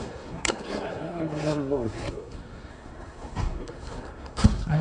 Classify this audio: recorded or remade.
remade